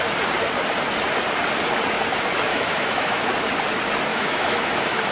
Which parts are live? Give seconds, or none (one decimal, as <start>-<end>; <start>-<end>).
0.0-2.5; 3.3-4.1

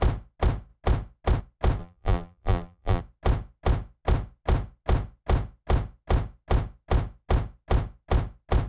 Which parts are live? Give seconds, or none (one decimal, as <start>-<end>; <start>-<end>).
0.0-1.8; 3.0-8.7

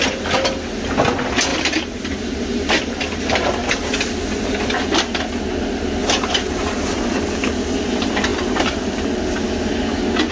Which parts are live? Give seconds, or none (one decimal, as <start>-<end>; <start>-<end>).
0.0-1.5; 3.0-6.0; 7.2-8.3; 9.0-10.3

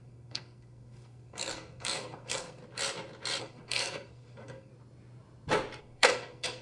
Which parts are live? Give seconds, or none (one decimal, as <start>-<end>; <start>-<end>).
2.6-3.4; 4.7-5.8

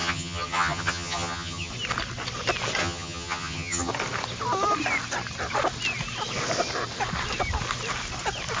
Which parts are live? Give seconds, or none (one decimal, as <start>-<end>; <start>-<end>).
1.7-2.8; 3.9-8.6